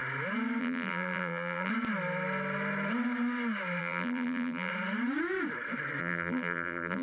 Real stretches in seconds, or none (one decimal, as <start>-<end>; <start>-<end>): 0.0-0.6; 1.7-3.8; 4.7-6.0